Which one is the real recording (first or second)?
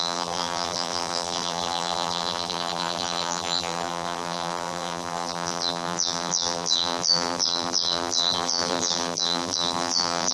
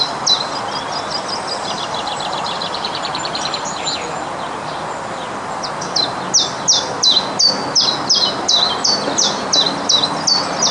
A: second